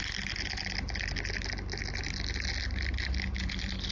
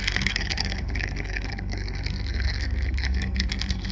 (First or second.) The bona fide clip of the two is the first